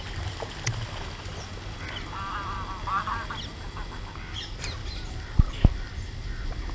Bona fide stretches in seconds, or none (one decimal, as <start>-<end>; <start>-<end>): 0.0-6.7